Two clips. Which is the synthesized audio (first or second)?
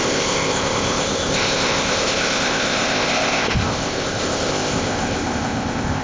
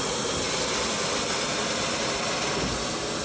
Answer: first